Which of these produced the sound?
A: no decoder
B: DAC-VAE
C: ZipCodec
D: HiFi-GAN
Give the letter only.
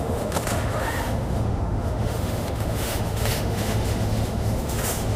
B